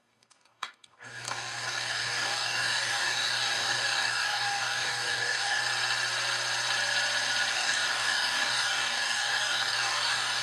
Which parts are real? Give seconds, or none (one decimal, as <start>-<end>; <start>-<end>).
5.6-7.5